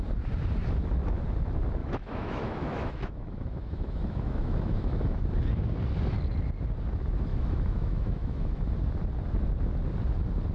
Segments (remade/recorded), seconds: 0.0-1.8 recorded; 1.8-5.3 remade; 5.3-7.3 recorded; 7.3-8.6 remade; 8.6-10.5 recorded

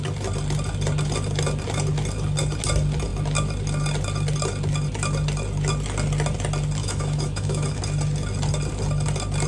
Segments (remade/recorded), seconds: 0.0-6.8 recorded; 6.8-7.8 remade; 7.8-9.5 recorded

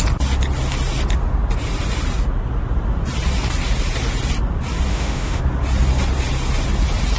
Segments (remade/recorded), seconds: 0.0-4.9 recorded; 4.9-5.4 remade; 5.4-7.2 recorded

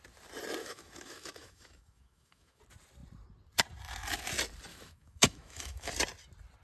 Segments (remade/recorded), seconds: 0.0-0.6 recorded; 0.6-2.6 remade; 2.6-4.7 recorded; 4.7-5.9 remade; 5.9-6.6 recorded

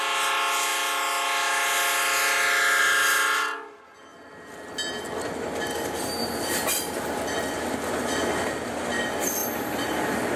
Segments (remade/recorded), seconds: 0.0-10.4 recorded

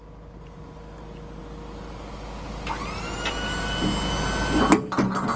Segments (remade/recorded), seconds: 0.0-5.4 recorded

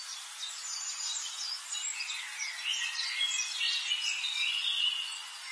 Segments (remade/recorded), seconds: 0.0-5.5 recorded

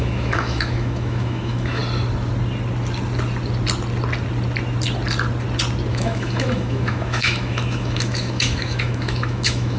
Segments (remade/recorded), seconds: 0.0-1.8 remade; 1.8-5.9 recorded; 5.9-9.8 remade